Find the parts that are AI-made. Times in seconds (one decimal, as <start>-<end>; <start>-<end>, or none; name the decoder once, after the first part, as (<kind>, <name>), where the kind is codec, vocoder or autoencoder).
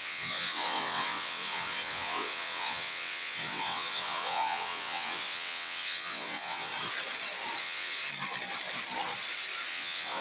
0.0-6.7 (vocoder, WaveNeXt); 7.6-8.0; 9.7-10.2